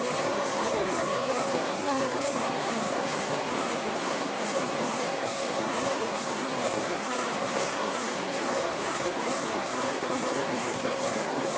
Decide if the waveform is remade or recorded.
remade